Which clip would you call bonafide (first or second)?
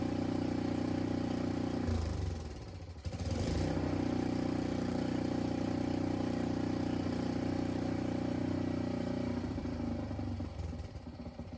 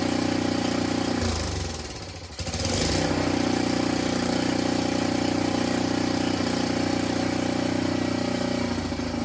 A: second